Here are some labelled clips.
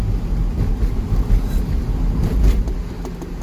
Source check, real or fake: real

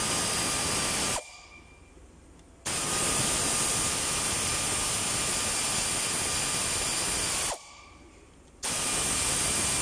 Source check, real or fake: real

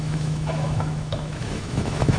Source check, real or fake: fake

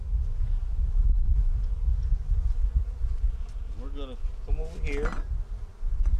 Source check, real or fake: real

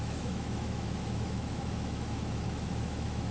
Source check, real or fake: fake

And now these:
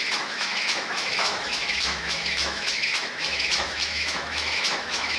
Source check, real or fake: fake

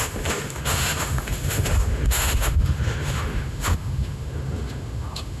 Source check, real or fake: fake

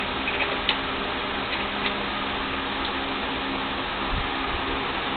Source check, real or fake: real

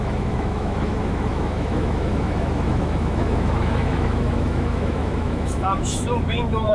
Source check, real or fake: fake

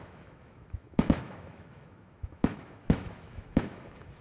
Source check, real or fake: fake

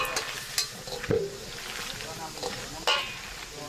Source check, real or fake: real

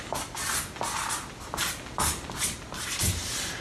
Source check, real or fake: real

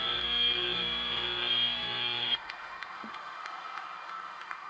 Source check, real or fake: fake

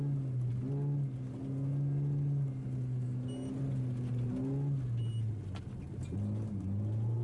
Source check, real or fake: real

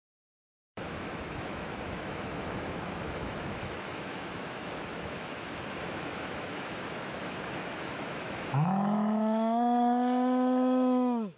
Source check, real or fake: fake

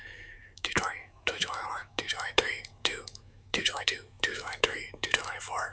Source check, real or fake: fake